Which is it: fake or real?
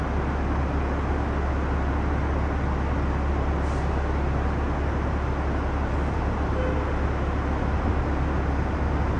real